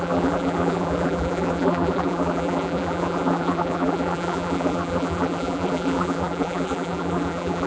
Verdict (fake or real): fake